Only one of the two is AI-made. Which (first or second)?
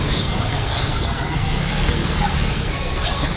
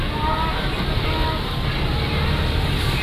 first